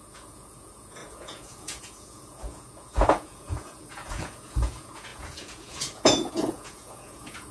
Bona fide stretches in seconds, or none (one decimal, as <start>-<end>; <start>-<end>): none

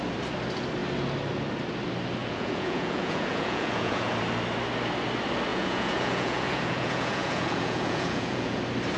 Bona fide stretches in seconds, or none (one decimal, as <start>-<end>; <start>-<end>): 0.0-2.2; 4.1-5.5; 8.6-9.0

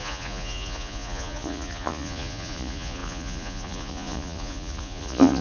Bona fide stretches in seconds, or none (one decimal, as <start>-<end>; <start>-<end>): none

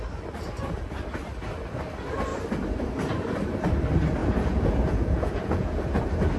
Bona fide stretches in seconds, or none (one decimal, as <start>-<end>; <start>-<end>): 0.0-4.2; 6.0-6.4

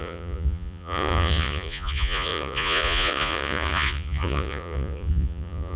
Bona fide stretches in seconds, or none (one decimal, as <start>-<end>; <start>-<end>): none